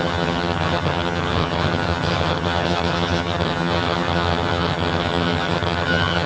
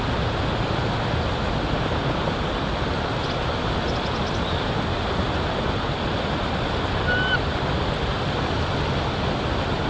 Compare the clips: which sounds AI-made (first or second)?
first